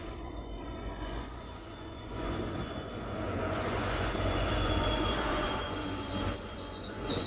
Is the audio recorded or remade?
remade